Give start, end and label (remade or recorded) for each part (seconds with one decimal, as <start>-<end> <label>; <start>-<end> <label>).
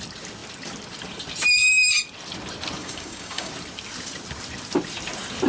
0.0-2.8 recorded; 2.8-3.5 remade; 3.5-5.5 recorded